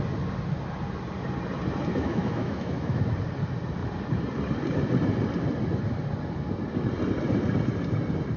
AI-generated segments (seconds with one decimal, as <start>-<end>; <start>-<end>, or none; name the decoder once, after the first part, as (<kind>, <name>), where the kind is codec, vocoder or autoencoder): 1.9-3.0 (autoencoder, DAC-VAE)